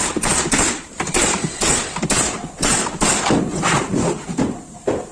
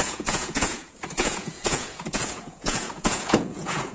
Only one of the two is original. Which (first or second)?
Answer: first